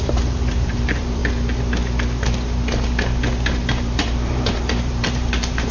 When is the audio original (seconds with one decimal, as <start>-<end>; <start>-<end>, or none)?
1.2-3.5